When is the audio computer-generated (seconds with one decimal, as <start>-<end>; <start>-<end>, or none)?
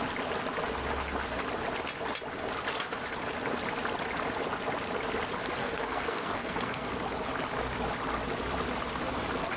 5.6-6.9